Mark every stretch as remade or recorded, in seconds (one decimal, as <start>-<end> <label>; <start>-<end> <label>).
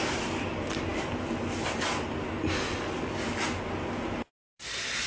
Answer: 0.0-5.1 recorded